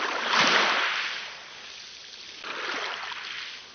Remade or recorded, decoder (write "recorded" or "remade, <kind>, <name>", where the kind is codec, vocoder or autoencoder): recorded